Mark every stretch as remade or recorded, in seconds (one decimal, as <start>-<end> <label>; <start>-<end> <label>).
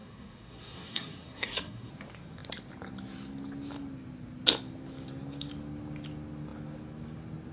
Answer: 0.0-1.9 remade; 1.9-7.5 recorded